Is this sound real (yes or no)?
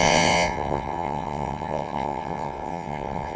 no